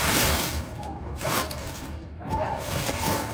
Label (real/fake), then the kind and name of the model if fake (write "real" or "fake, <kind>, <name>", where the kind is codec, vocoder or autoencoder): fake, codec, DAC